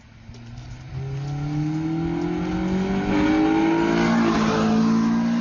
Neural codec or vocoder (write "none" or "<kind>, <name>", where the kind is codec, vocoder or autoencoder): none